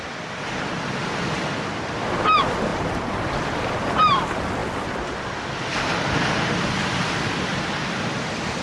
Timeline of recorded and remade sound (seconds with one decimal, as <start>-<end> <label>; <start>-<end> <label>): 0.0-8.6 remade

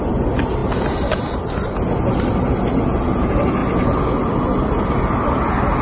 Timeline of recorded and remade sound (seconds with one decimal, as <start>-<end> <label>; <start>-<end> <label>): 0.0-5.8 recorded

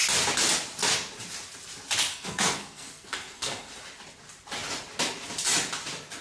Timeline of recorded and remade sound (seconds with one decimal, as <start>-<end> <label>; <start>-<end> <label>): 0.0-2.1 recorded; 2.1-3.7 remade; 3.7-6.2 recorded

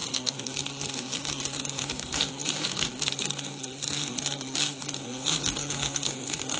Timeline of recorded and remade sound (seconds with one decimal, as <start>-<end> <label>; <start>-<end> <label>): 0.0-6.6 remade